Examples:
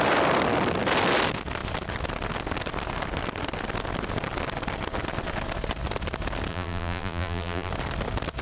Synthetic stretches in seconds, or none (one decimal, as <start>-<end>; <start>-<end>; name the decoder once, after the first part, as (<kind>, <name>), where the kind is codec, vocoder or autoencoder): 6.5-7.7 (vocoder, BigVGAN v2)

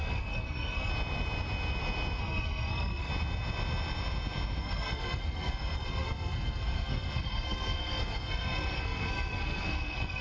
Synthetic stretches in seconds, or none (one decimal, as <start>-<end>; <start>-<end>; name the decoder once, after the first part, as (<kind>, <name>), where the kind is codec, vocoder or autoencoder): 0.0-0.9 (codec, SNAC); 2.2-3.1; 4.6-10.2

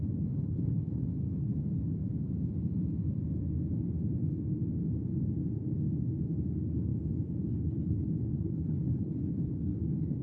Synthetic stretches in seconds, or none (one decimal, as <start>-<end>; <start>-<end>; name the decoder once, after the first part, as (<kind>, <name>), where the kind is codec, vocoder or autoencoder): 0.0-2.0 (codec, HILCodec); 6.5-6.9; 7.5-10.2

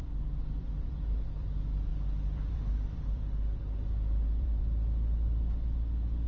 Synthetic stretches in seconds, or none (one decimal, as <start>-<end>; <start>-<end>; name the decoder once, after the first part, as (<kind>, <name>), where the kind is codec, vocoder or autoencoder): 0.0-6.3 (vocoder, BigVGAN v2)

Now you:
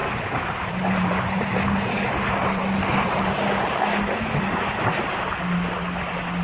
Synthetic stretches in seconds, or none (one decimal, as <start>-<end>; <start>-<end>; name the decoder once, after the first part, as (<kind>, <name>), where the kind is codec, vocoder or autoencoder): 0.0-3.2 (vocoder, BigVGAN v2)

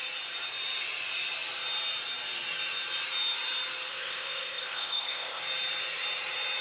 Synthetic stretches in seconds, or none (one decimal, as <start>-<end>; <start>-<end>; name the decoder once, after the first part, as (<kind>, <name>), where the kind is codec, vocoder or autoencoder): 3.9-5.4 (codec, ZipCodec)